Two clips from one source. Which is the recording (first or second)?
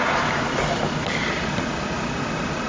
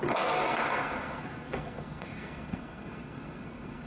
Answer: first